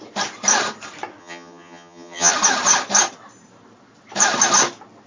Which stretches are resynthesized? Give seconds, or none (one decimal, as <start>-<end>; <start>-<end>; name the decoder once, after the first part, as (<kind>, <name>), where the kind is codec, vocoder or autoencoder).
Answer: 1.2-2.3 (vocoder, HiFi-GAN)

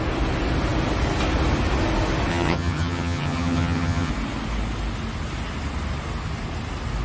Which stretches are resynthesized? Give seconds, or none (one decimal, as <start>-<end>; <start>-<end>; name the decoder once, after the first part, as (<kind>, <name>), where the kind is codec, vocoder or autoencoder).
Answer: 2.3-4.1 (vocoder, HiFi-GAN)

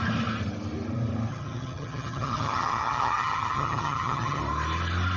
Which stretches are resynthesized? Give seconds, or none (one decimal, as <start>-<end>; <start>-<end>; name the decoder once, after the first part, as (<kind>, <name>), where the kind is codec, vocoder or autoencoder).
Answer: 1.3-4.4 (vocoder, HiFi-GAN)